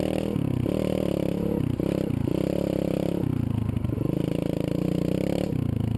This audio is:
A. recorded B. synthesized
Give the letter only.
A